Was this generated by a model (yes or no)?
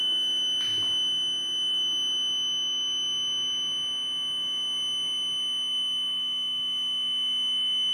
no